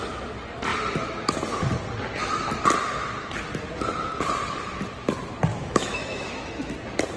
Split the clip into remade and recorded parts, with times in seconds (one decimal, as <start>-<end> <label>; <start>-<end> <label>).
0.0-5.5 recorded; 5.5-6.7 remade; 6.7-7.2 recorded